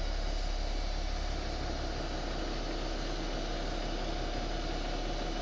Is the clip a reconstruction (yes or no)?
no